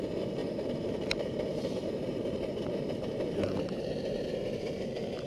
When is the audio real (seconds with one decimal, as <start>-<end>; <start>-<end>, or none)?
0.0-0.4; 3.6-5.3